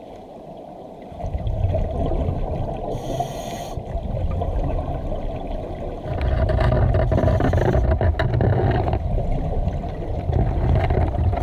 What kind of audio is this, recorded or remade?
recorded